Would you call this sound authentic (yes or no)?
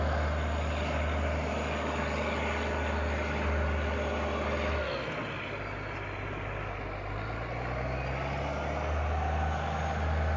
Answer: yes